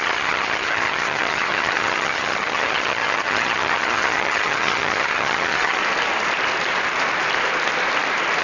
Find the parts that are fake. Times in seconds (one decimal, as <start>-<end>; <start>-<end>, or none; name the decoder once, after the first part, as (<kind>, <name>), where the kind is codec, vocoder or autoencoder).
0.0-5.8 (vocoder, HiFi-GAN)